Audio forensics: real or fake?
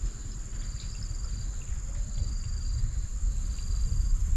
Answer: real